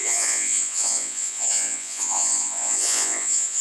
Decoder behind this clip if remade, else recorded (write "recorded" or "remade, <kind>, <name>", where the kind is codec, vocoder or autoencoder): remade, vocoder, Vocos